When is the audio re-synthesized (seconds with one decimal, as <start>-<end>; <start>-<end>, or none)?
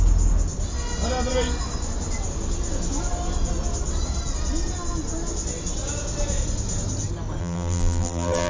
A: 7.4-8.5